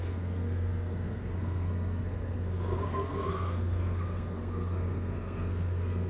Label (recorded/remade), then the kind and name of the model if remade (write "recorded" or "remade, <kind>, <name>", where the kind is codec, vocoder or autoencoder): remade, codec, SNAC